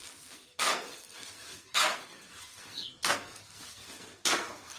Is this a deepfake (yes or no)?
yes